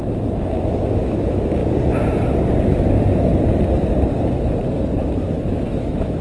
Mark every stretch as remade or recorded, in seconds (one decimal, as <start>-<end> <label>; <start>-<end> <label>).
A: 0.0-1.6 remade; 1.6-2.6 recorded; 2.6-3.3 remade; 3.3-5.3 recorded; 5.3-6.2 remade

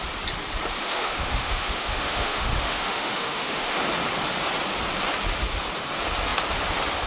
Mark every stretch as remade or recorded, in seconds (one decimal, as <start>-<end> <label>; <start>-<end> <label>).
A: 0.0-0.8 recorded; 0.8-3.8 remade; 3.8-7.1 recorded